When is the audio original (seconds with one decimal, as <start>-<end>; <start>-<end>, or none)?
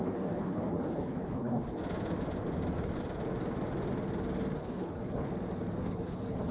1.8-4.6; 5.3-5.8